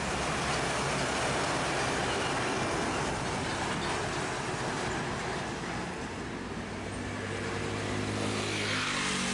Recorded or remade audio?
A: recorded